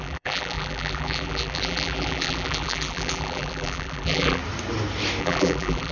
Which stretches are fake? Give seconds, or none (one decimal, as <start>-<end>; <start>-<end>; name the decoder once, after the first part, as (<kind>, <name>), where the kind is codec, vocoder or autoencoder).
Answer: 0.0-4.4 (vocoder, BigVGAN v2); 5.2-5.9